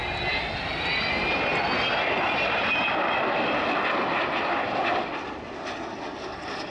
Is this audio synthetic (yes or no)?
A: no